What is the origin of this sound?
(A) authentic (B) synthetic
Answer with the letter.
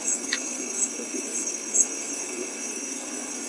B